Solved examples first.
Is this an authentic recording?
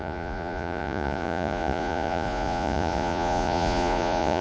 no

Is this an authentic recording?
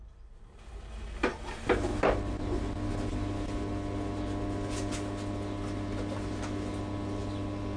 yes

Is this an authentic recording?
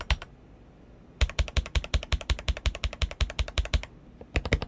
no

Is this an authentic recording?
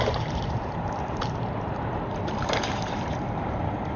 no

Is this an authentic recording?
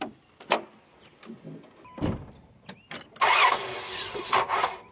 yes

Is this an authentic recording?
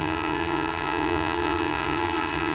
no